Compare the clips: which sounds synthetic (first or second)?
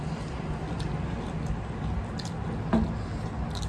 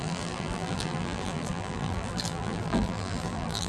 second